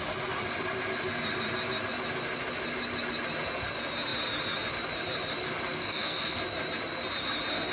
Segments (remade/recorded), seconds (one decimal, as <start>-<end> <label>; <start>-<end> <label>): 0.0-5.8 recorded; 5.8-6.4 remade; 6.4-7.7 recorded